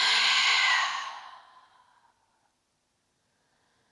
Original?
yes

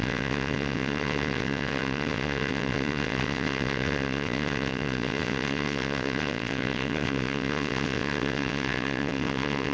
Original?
no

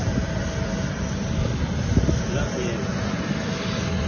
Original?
yes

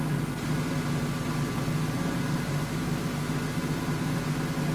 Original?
yes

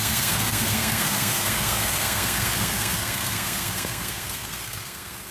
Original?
no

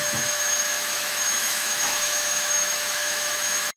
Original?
no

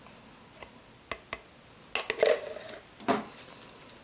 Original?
yes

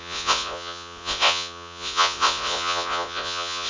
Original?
no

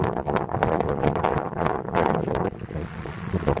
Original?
no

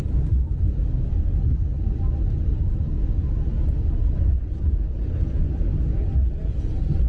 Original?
yes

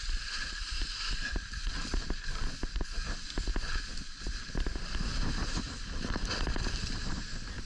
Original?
yes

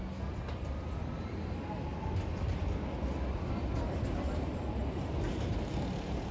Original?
yes